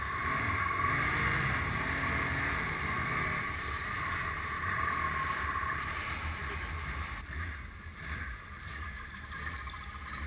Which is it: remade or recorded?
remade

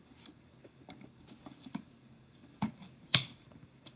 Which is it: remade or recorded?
remade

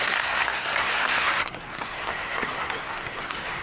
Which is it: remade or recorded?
remade